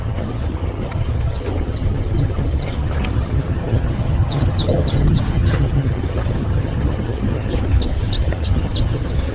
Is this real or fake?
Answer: fake